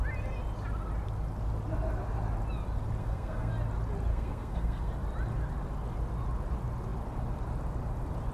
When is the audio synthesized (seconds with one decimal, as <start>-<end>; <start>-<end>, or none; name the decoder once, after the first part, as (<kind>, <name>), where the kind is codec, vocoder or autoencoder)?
3.0-3.5 (codec, SNAC); 4.1-4.9